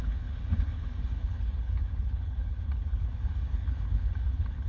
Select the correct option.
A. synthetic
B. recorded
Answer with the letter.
A